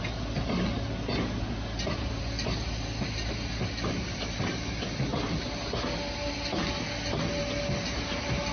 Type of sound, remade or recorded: recorded